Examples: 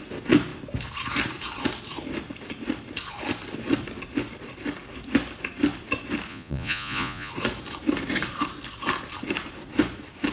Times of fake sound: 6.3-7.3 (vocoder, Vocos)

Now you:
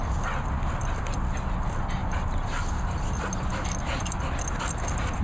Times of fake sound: none

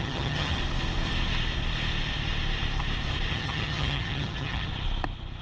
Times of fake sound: 0.0-0.6 (vocoder, HiFi-GAN); 3.3-4.7

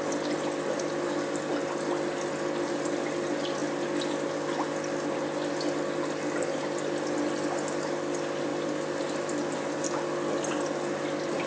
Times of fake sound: none